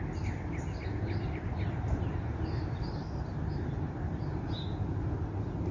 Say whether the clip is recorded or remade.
recorded